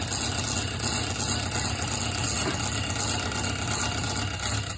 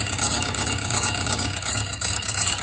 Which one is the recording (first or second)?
first